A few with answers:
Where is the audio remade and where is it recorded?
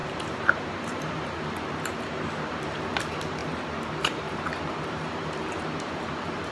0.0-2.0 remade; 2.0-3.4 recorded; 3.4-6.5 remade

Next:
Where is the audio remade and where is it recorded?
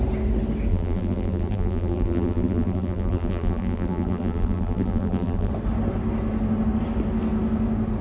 0.0-0.7 recorded; 0.7-5.5 remade; 5.5-8.0 recorded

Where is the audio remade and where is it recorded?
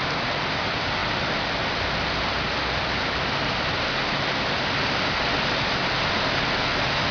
0.0-7.1 recorded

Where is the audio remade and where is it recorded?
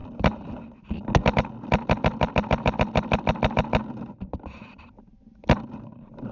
0.0-3.8 recorded; 3.8-5.1 remade; 5.1-5.7 recorded; 5.7-6.3 remade